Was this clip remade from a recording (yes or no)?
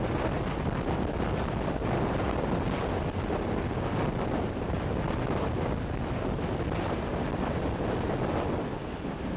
no